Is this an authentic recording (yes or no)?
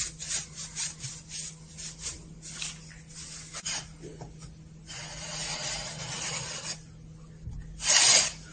yes